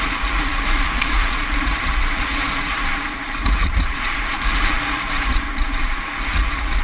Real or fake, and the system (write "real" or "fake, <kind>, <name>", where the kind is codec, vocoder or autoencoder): fake, vocoder, Vocos